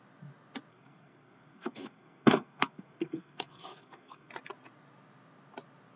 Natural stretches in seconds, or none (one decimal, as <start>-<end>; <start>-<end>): 0.0-0.7; 4.3-6.0